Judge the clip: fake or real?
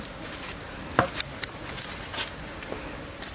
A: real